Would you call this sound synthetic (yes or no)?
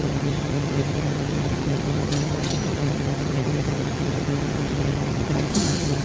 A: yes